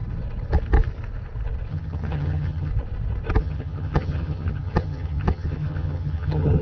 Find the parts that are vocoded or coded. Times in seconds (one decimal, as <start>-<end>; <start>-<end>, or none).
1.7-2.7; 3.4-6.6